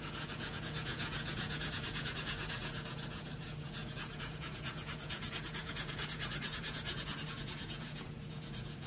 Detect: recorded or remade remade